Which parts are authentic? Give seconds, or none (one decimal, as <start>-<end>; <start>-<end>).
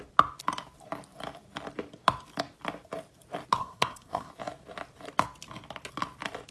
0.0-3.6; 4.3-6.5